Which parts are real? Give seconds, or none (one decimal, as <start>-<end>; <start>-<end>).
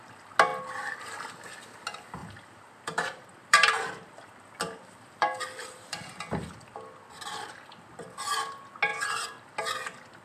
0.0-2.2; 7.1-10.2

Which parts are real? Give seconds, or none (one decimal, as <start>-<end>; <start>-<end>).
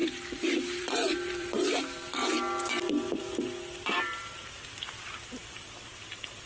2.2-3.2; 4.2-5.4